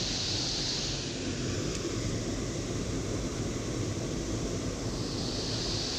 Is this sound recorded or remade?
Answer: recorded